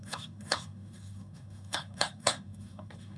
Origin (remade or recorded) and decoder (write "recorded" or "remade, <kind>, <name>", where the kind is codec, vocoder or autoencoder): remade, codec, SNAC